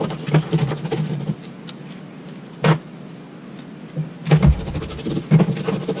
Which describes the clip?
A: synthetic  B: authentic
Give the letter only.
B